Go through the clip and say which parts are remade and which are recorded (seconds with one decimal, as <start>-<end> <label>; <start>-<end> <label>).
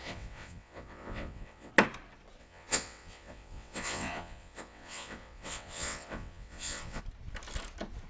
0.0-1.7 remade; 1.7-2.4 recorded; 2.4-7.0 remade; 7.0-8.1 recorded